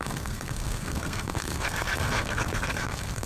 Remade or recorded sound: remade